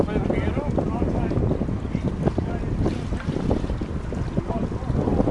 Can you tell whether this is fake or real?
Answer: real